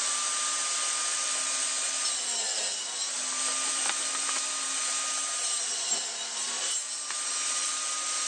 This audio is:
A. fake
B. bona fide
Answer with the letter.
B